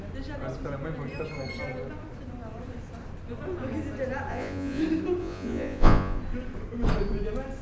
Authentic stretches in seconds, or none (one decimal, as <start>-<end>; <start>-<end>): 0.0-4.3; 4.8-5.2; 6.2-7.6